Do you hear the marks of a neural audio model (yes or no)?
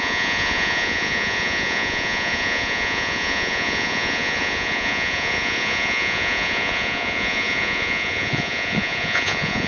yes